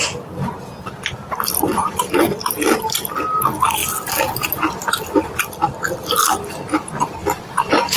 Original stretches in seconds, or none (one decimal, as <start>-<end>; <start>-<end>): 0.0-1.7; 3.2-7.2